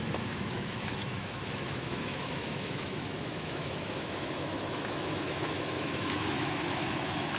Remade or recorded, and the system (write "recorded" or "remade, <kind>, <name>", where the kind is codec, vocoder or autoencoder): remade, autoencoder, DAC-VAE